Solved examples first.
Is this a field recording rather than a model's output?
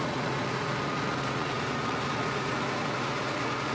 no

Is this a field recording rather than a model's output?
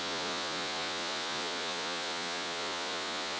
no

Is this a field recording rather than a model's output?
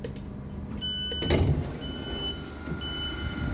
yes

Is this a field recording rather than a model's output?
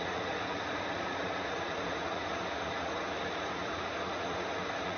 no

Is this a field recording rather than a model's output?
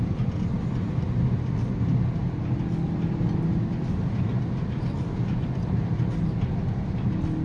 yes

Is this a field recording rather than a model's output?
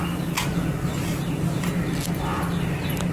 yes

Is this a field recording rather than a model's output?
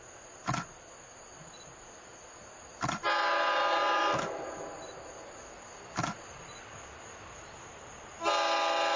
yes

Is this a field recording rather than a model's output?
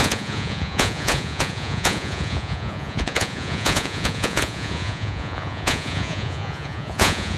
no